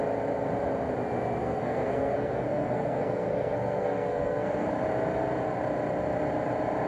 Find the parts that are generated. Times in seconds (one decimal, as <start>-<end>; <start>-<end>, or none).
1.4-4.7

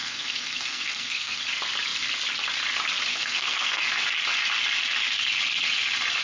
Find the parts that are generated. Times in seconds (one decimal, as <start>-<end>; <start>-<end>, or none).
0.0-1.4; 3.1-3.8

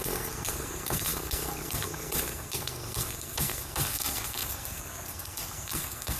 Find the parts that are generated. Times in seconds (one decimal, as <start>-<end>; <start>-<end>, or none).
0.0-6.2

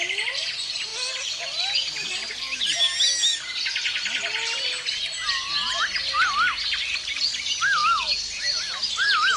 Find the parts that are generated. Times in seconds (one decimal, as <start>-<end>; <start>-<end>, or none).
none